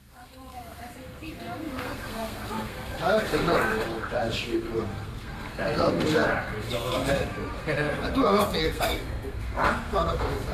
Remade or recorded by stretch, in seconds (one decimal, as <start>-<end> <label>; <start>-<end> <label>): 0.0-10.5 remade